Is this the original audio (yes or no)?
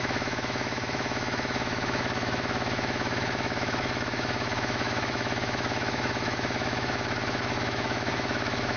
no